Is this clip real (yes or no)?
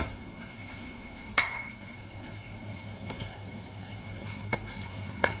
no